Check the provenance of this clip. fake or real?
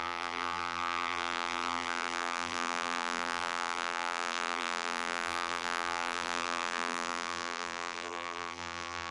fake